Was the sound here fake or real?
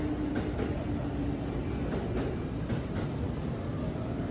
fake